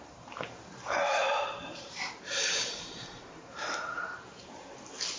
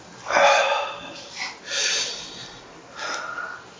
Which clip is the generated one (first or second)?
first